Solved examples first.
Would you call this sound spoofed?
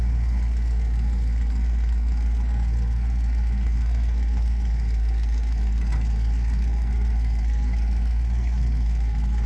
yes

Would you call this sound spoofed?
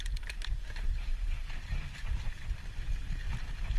yes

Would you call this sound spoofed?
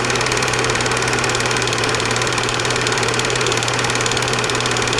yes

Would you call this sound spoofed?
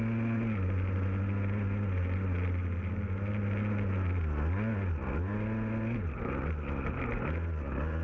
no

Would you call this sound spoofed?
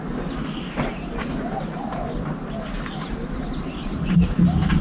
no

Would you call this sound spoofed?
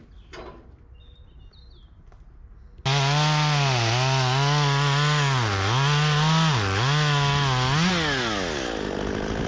no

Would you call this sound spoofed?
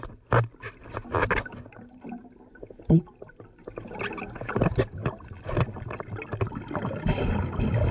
no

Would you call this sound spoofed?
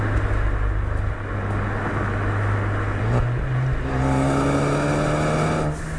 no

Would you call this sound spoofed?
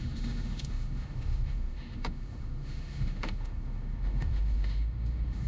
yes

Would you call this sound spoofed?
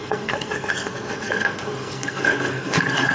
yes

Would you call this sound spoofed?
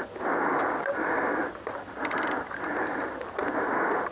no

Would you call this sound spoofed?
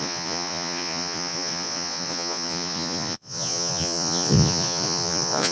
yes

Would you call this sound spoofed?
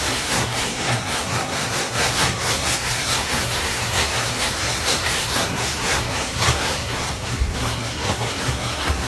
yes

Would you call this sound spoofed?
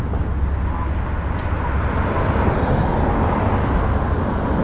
no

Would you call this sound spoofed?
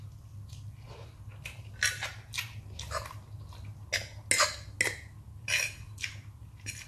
no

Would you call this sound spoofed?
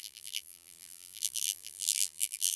yes